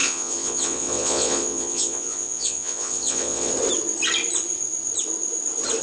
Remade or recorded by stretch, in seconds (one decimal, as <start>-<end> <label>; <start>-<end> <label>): 0.0-3.5 remade; 3.5-5.8 recorded